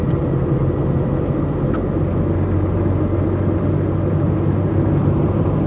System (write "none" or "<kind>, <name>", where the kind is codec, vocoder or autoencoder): none